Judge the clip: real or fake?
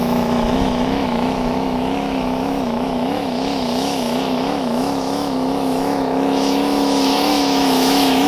fake